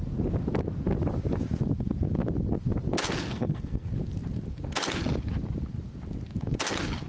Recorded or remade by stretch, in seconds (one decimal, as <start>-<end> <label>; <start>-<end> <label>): 0.0-3.3 recorded; 3.3-3.9 remade; 3.9-7.1 recorded